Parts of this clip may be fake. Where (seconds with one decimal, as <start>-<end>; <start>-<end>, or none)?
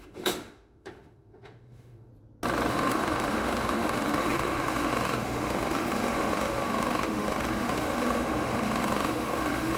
0.0-2.1; 2.7-9.8